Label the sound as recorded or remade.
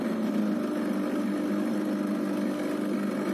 recorded